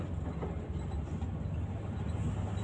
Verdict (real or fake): real